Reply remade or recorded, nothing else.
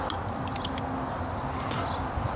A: recorded